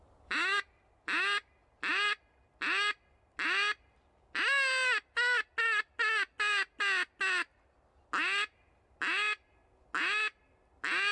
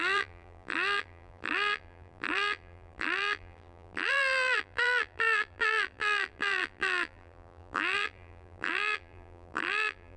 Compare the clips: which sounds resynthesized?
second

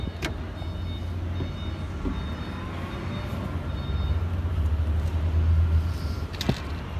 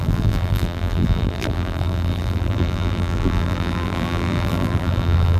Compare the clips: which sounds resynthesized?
second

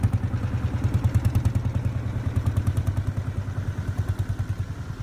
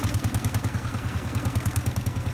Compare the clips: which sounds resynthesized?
second